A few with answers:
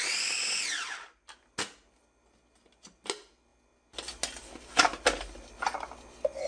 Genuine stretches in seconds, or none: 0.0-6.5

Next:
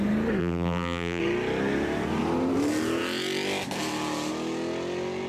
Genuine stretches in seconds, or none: 0.0-0.4; 1.2-5.3